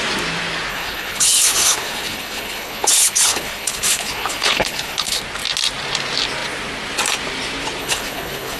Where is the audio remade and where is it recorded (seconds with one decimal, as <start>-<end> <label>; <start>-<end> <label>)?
0.0-0.7 recorded; 0.7-5.2 remade; 5.2-7.8 recorded; 7.8-8.6 remade